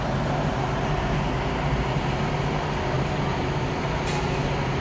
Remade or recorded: recorded